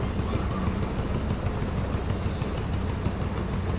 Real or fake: real